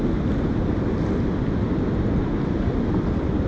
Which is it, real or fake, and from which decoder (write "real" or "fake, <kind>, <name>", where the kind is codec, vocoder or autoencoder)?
real